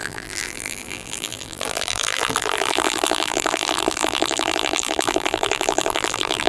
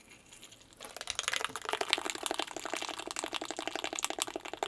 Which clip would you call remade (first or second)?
first